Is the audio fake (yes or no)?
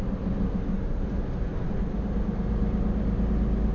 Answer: no